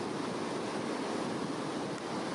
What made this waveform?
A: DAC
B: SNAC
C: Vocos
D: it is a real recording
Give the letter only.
D